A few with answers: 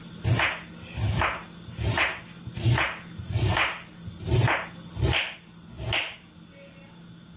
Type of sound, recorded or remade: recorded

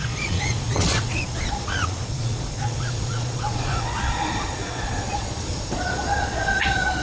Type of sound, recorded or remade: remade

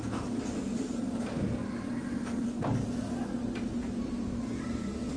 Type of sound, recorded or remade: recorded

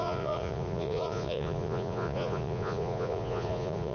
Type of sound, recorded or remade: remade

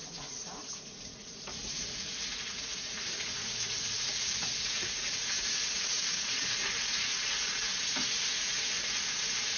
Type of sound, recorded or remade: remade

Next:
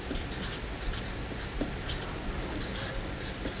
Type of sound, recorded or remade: recorded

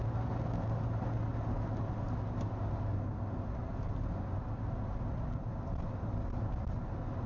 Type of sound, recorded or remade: recorded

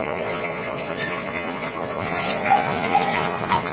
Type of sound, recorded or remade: remade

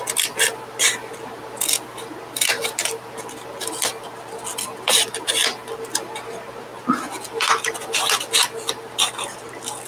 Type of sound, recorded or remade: recorded